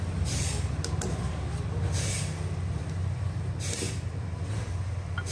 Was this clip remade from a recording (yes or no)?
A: yes